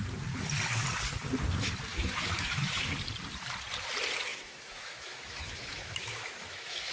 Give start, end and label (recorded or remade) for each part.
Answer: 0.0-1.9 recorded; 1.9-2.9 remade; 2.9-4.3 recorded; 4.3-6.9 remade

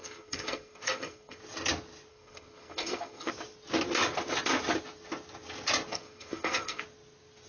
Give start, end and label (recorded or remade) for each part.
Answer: 0.0-1.4 remade; 1.4-2.1 recorded; 2.1-3.3 remade; 3.3-5.9 recorded; 5.9-6.8 remade; 6.8-7.5 recorded

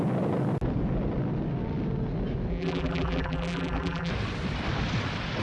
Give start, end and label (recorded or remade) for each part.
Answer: 0.0-2.5 recorded; 2.5-4.1 remade; 4.1-5.4 recorded

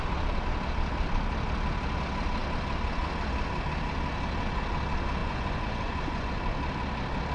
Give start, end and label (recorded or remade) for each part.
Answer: 0.0-5.2 recorded; 5.2-6.3 remade; 6.3-7.3 recorded